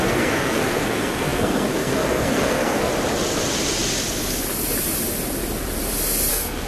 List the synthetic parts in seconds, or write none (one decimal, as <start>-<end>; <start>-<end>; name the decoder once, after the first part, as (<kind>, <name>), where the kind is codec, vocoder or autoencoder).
0.0-2.9 (codec, SNAC); 6.3-6.7